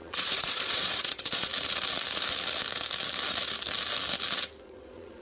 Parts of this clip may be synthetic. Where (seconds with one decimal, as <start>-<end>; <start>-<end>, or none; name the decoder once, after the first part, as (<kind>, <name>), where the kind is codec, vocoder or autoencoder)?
0.0-1.5 (vocoder, Vocos); 4.6-5.2